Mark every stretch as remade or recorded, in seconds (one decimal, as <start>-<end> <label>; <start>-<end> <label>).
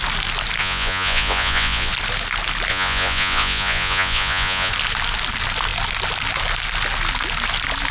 0.0-0.6 recorded; 0.6-1.9 remade; 1.9-2.7 recorded; 2.7-4.7 remade; 4.7-7.9 recorded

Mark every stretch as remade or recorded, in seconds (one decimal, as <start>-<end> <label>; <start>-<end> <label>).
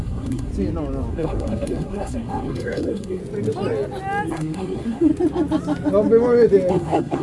0.0-0.5 remade; 0.5-1.1 recorded; 1.1-3.2 remade; 3.2-4.3 recorded; 4.3-5.1 remade; 5.1-6.7 recorded; 6.7-7.2 remade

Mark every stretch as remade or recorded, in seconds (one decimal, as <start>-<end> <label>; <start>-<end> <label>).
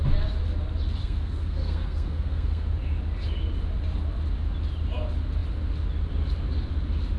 0.0-1.0 recorded; 1.0-2.6 remade; 2.6-7.2 recorded